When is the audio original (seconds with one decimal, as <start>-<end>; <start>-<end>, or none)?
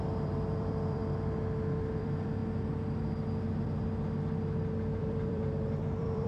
1.0-1.9; 2.4-5.0